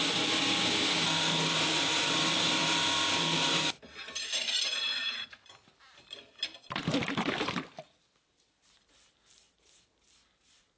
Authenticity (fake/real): real